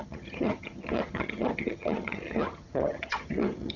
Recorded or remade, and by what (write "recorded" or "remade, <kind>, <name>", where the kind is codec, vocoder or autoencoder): remade, vocoder, HiFi-GAN